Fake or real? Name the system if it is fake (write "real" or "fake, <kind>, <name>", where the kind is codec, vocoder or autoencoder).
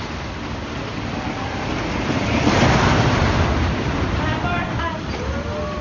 real